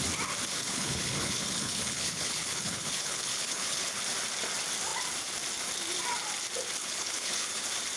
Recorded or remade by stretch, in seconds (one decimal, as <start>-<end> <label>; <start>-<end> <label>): 0.0-0.5 recorded; 0.5-4.0 remade; 4.0-6.8 recorded; 6.8-7.6 remade; 7.6-8.0 recorded